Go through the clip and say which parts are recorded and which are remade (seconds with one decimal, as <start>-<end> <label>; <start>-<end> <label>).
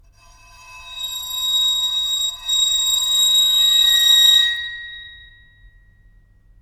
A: 0.0-3.0 remade; 3.0-3.8 recorded; 3.8-5.3 remade; 5.3-6.6 recorded